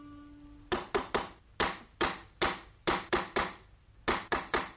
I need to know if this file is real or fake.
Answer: real